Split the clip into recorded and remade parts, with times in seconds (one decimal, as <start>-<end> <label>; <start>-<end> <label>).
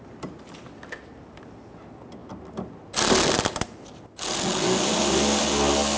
0.0-6.0 recorded